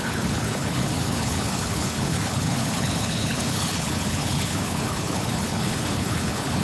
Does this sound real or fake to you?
fake